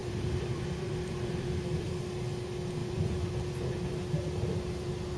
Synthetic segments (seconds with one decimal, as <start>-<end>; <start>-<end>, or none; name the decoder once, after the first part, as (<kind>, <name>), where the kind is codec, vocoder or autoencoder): 0.0-1.9 (vocoder, BigVGAN v2); 2.8-3.3

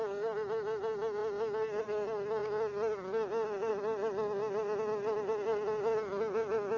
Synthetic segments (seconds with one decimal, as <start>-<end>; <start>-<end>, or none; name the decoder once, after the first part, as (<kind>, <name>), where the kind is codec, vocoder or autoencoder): none